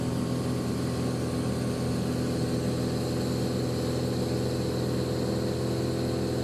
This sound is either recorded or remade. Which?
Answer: recorded